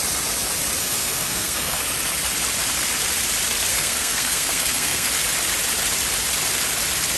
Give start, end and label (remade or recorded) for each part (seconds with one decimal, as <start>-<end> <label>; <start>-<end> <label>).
0.0-0.8 recorded; 0.8-1.8 remade; 1.8-3.7 recorded; 3.7-5.1 remade; 5.1-7.2 recorded